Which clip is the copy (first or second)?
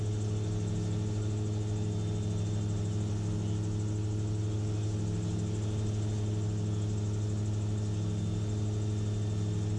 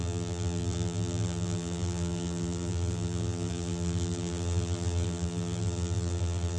second